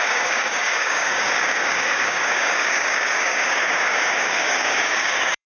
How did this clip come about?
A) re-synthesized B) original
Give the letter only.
A